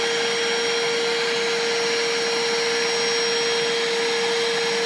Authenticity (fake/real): real